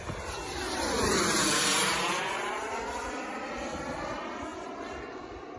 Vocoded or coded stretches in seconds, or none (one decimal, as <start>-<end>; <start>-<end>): none